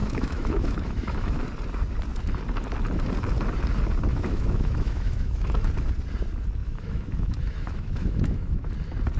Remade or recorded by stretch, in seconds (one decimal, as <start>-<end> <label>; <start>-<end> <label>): 0.0-1.4 remade; 1.4-4.1 recorded; 4.1-5.7 remade; 5.7-6.6 recorded; 6.6-8.7 remade; 8.7-9.2 recorded